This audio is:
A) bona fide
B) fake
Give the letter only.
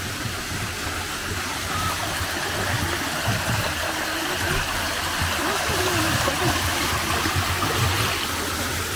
A